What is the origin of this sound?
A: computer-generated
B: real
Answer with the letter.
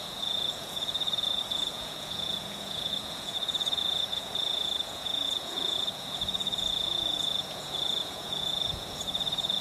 A